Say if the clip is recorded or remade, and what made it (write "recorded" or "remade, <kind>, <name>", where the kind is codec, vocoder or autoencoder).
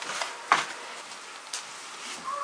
recorded